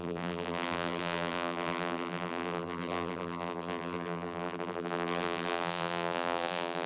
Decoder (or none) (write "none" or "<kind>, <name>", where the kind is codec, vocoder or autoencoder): vocoder, BigVGAN v2